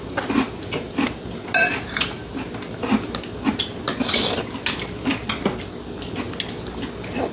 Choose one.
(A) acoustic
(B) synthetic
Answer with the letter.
A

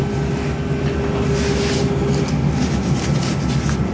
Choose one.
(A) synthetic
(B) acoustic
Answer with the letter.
B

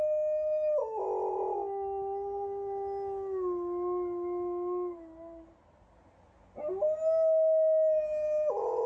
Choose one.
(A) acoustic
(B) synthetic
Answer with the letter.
A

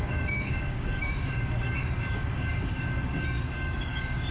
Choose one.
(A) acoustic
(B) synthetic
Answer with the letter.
B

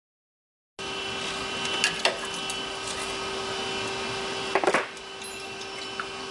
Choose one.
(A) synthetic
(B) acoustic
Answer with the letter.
B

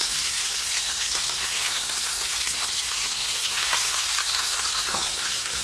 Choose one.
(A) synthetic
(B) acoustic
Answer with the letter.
A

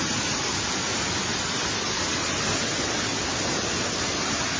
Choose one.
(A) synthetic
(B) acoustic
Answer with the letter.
B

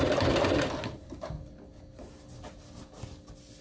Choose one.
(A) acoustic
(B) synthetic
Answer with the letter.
A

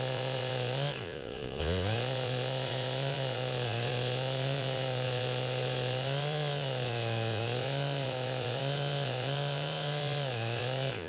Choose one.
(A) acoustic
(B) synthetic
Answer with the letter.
B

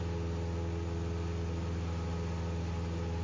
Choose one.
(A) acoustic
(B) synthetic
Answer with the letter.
A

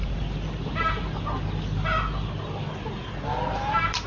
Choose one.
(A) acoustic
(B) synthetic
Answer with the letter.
A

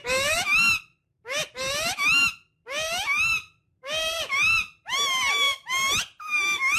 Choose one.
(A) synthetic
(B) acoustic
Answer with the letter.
B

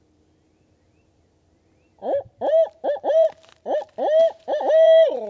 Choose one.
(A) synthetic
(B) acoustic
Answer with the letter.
A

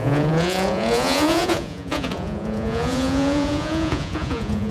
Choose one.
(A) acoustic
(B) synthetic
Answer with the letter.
B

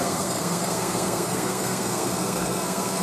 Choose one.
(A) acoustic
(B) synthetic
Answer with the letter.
B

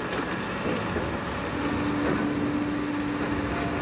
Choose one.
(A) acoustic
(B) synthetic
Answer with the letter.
A